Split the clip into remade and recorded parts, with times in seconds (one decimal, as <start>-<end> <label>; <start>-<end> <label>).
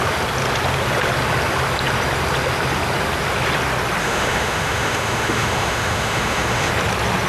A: 0.0-4.0 recorded; 4.0-6.7 remade; 6.7-7.3 recorded